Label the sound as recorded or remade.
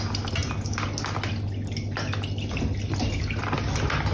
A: recorded